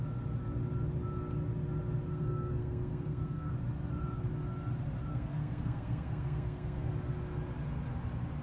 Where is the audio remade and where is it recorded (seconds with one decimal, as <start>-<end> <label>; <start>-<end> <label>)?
0.0-2.1 recorded; 2.1-3.5 remade; 3.5-5.1 recorded; 5.1-6.9 remade; 6.9-8.4 recorded

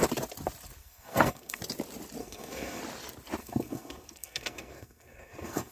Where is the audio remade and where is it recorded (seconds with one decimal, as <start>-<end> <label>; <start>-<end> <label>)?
0.0-0.8 recorded; 0.8-1.6 remade; 1.6-2.2 recorded; 2.2-2.8 remade; 2.8-3.4 recorded; 3.4-5.7 remade

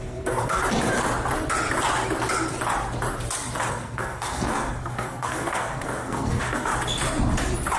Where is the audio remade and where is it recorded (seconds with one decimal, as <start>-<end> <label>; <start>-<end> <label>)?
0.0-0.6 remade; 0.6-3.7 recorded; 3.7-6.7 remade; 6.7-7.8 recorded